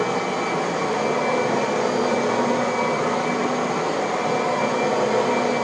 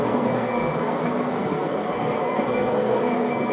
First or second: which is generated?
second